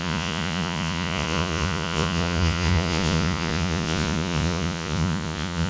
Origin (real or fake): fake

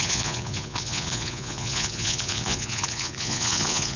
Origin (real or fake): fake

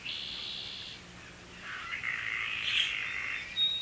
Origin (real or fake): real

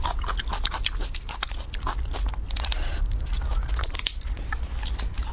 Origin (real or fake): fake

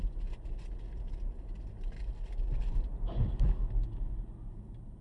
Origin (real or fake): real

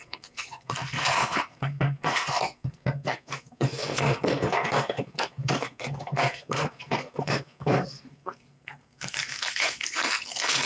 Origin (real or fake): fake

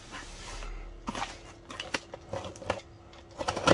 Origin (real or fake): real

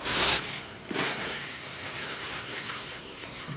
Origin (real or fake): fake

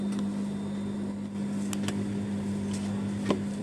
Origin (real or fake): real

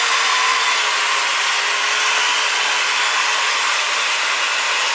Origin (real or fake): real